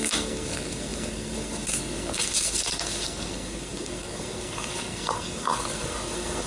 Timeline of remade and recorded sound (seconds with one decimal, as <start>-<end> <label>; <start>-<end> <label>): 0.0-6.5 remade